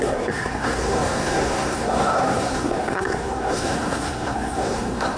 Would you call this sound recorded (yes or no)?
no